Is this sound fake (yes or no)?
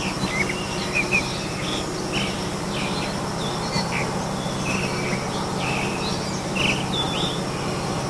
no